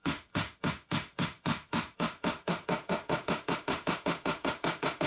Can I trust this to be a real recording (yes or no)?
no